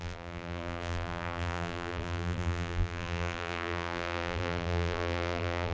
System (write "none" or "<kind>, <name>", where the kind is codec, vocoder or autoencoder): vocoder, BigVGAN v2